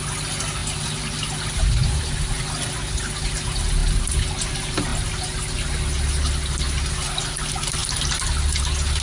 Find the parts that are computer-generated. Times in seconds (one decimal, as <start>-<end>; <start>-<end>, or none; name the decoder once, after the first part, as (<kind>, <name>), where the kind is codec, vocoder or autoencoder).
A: none

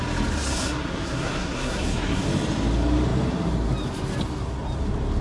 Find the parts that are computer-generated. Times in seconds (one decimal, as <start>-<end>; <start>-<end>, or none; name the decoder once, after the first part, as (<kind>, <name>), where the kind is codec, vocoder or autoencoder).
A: 0.5-2.2 (codec, SNAC)